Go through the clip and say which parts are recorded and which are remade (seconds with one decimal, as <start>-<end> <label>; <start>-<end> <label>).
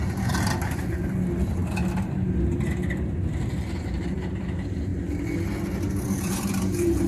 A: 0.0-1.6 remade; 1.6-2.4 recorded; 2.4-4.9 remade; 4.9-5.9 recorded; 5.9-7.1 remade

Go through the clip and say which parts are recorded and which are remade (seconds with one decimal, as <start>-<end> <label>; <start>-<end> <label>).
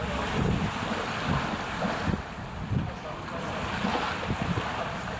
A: 0.0-2.1 remade; 2.1-5.2 recorded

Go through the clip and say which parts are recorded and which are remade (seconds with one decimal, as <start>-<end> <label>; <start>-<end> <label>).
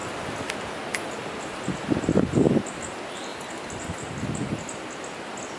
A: 0.0-5.6 recorded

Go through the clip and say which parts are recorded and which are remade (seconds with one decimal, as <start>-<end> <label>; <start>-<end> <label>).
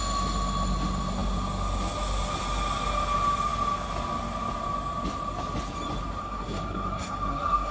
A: 0.0-6.2 recorded; 6.2-7.7 remade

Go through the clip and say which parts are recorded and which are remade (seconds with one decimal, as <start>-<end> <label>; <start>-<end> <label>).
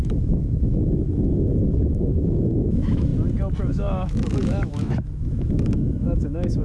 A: 0.0-3.1 remade; 3.1-3.6 recorded; 3.6-6.6 remade